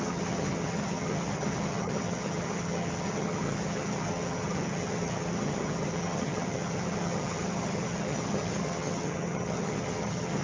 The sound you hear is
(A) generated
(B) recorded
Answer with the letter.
A